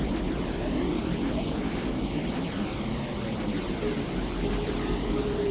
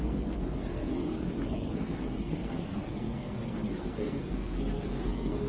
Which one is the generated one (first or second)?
second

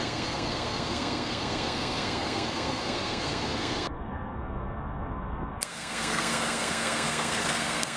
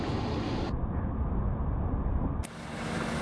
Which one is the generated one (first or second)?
first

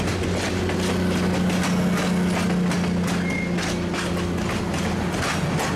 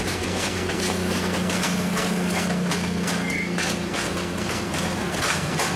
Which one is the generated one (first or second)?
second